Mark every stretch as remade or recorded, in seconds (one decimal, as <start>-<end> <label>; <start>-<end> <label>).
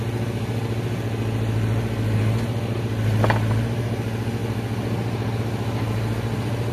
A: 0.0-6.7 recorded